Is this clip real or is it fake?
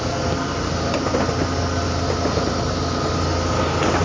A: real